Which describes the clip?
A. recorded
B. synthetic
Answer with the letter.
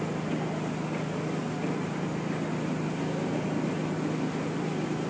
A